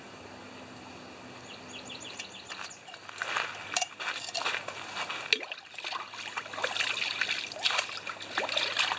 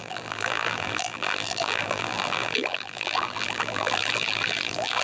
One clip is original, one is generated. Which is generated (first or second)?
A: second